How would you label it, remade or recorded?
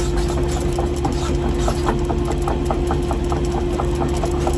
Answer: recorded